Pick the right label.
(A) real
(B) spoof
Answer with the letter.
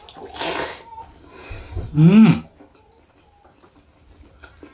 A